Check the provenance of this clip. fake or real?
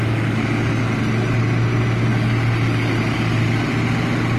real